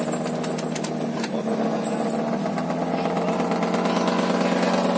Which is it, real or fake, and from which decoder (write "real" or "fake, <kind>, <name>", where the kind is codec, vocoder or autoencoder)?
real